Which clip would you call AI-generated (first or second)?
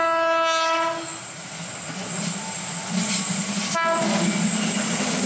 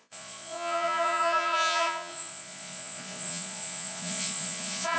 second